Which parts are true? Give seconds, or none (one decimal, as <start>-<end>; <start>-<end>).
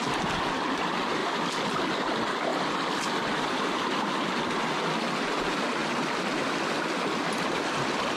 0.0-5.8; 6.7-8.2